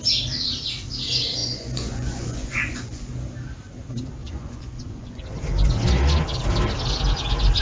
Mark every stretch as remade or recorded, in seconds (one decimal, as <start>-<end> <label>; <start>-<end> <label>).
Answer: 0.0-1.4 recorded; 1.4-3.1 remade; 3.1-4.2 recorded; 4.2-5.4 remade; 5.4-7.6 recorded